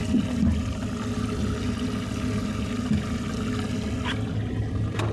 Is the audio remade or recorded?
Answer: recorded